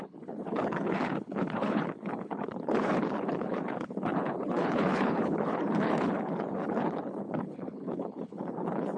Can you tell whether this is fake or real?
fake